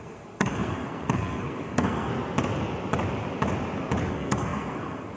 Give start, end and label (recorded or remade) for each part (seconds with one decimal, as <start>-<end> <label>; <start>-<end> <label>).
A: 0.0-2.1 remade; 2.1-4.1 recorded; 4.1-5.2 remade

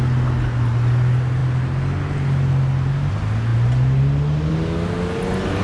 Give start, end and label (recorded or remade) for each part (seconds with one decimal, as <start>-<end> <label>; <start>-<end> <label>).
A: 0.0-5.6 recorded